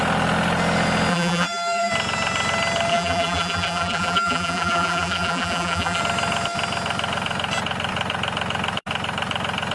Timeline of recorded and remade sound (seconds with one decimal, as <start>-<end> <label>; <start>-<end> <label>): 0.0-1.1 recorded; 1.1-1.9 remade; 1.9-2.9 recorded; 2.9-6.0 remade; 6.0-9.7 recorded